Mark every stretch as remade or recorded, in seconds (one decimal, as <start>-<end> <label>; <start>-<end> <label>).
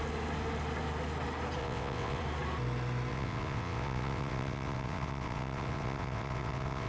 0.0-1.6 recorded; 1.6-2.2 remade; 2.2-3.1 recorded; 3.1-6.9 remade